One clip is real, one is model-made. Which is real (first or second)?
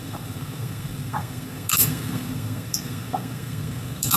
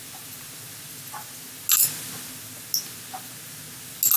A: second